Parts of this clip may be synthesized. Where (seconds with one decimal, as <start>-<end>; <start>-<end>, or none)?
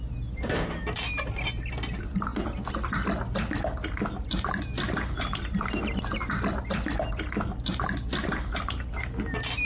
none